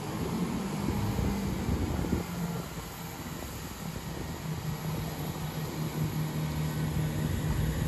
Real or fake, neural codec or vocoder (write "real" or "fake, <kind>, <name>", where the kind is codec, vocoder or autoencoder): real